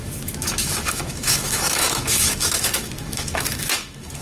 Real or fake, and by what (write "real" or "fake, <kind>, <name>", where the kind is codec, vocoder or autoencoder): fake, autoencoder, DAC-VAE